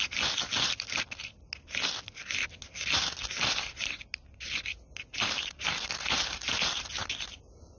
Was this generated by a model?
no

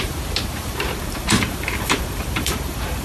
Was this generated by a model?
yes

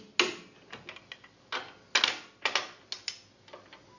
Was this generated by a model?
no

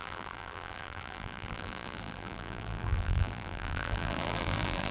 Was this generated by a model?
yes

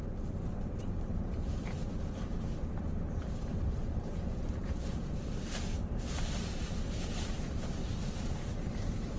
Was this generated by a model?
yes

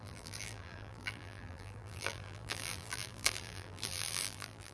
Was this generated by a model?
yes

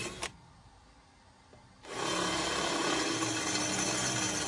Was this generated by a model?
no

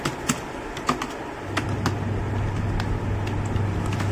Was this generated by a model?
no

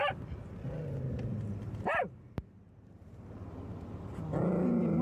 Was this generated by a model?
no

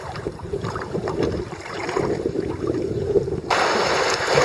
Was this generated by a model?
yes